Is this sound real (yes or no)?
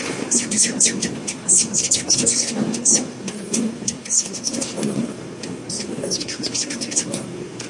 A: no